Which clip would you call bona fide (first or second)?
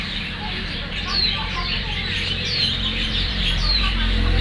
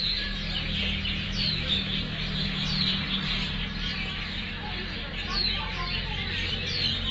second